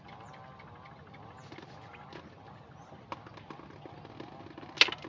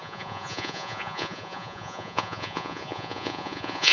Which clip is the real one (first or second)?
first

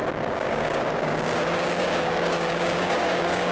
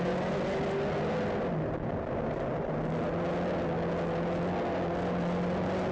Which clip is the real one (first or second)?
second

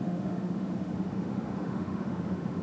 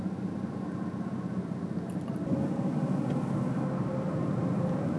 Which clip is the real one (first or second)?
second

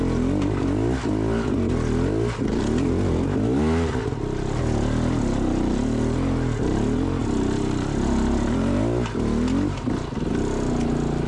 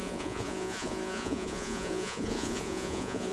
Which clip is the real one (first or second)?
first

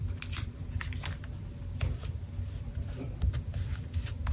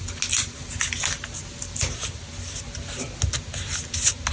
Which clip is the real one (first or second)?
second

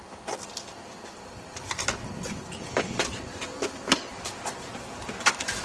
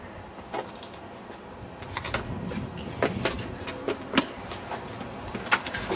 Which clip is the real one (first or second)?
second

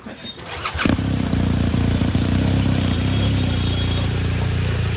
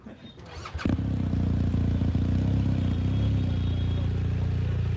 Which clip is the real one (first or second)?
second